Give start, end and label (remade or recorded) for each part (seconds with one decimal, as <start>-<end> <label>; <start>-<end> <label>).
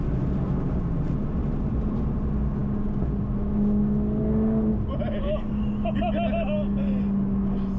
0.0-1.4 recorded; 1.4-2.2 remade; 2.2-4.7 recorded; 4.7-5.5 remade; 5.5-7.8 recorded